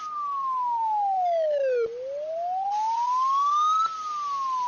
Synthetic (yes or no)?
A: no